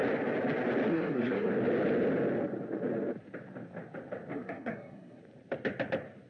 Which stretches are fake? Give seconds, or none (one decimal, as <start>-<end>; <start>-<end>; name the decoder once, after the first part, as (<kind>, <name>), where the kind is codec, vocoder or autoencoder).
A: 0.9-1.5 (codec, SNAC); 4.3-5.2